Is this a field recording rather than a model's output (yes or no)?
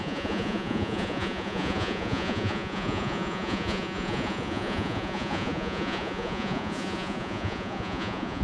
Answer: no